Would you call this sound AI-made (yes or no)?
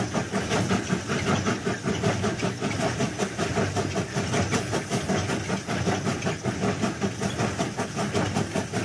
no